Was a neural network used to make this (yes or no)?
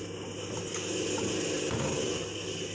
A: no